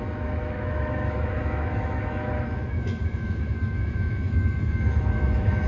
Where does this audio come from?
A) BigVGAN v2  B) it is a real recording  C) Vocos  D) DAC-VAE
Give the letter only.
D